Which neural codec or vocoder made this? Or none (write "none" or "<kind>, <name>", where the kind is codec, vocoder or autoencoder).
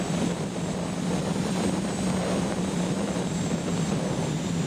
none